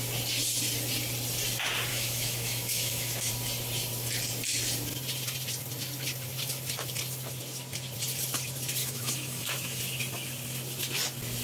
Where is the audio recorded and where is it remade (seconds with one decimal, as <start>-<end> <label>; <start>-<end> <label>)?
0.0-1.9 recorded; 1.9-3.3 remade; 3.3-8.8 recorded; 8.8-9.8 remade; 9.8-11.4 recorded